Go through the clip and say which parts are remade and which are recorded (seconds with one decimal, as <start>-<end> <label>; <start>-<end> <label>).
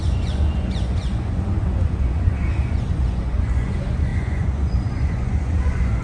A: 0.0-6.0 remade